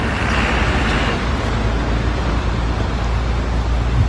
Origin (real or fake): real